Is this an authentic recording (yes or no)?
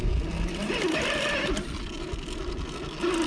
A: yes